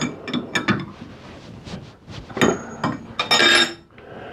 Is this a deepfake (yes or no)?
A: no